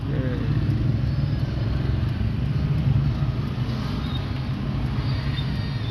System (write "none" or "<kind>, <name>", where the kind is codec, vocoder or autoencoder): none